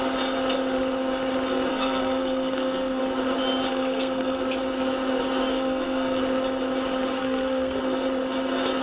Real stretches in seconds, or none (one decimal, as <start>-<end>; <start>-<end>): 0.0-1.7; 3.0-3.7; 4.4-5.5; 6.2-7.2; 7.8-8.8